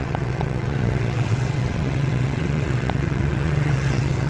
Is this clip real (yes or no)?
no